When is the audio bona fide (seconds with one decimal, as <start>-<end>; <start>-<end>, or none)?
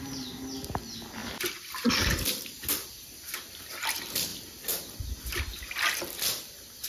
0.0-2.8; 3.9-6.9